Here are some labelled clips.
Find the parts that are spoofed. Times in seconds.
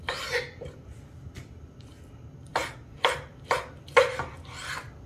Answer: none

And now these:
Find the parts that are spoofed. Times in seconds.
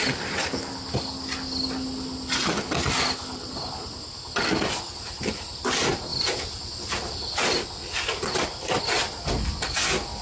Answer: none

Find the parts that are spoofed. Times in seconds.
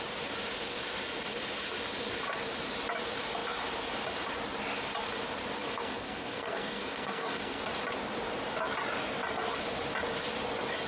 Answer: 5.6-7.6 (codec, SNAC)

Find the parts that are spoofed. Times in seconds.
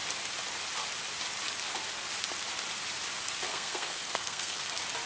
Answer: 3.5-4.6 (codec, SNAC)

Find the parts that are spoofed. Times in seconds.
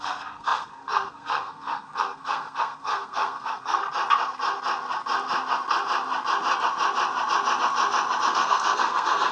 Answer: 0.0-3.8 (codec, SNAC); 8.3-9.3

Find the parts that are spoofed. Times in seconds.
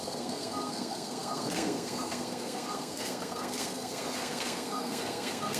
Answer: 0.0-5.6 (codec, SNAC)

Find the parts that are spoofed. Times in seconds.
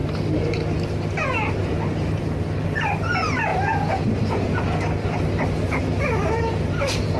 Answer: none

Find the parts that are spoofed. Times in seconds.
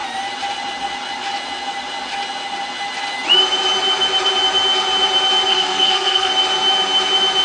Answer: 5.5-6.3 (codec, SNAC)